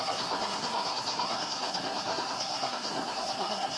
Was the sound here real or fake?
fake